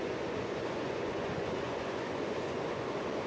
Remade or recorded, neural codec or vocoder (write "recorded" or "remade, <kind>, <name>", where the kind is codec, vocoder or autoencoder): remade, vocoder, Vocos